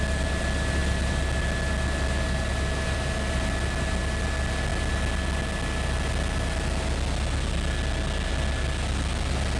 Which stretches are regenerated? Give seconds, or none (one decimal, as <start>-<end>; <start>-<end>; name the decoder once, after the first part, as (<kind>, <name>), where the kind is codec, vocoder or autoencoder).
none